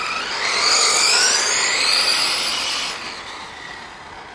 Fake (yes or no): no